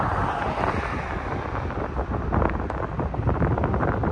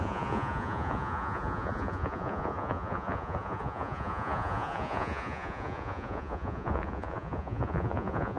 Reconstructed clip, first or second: second